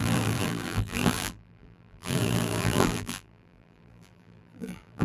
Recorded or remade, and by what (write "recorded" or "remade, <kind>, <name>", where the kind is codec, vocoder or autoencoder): remade, vocoder, BigVGAN v2